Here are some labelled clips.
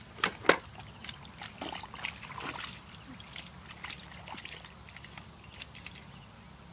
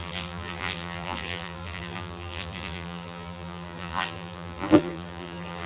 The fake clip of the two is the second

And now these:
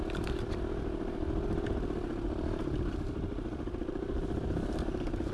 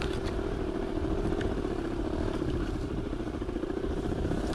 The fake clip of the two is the second